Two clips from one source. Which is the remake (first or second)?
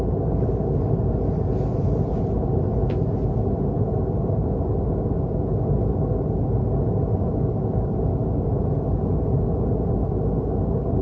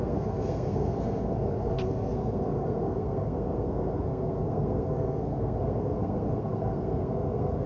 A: second